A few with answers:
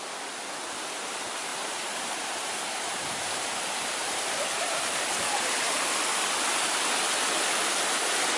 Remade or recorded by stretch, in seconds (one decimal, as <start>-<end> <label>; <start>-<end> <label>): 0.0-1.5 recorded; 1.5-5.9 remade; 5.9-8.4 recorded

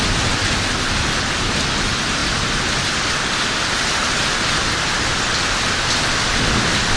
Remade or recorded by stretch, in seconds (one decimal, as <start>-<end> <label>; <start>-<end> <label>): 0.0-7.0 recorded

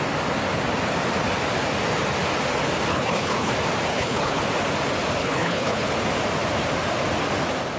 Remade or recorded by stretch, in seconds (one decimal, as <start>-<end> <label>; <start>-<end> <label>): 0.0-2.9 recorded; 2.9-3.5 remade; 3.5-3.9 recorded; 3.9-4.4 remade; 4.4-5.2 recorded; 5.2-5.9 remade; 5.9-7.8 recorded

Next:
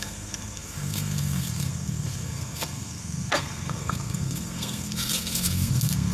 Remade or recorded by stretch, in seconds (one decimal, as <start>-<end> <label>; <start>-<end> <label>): 0.0-6.1 remade

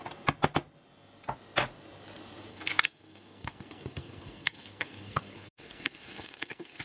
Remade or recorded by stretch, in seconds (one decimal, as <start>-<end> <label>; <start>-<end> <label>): 0.0-2.5 recorded; 2.5-6.8 remade

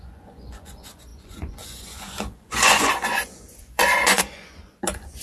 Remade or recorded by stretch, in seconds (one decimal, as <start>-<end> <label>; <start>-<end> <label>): 0.0-5.2 remade

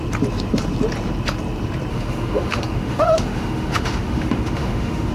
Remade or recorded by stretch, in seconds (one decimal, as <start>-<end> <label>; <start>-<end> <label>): 0.0-1.9 recorded; 1.9-5.1 remade

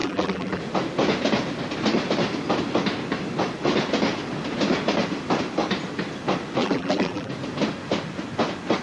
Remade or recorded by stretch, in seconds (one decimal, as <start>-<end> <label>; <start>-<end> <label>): 0.0-0.6 remade; 0.6-6.6 recorded; 6.6-7.3 remade; 7.3-8.8 recorded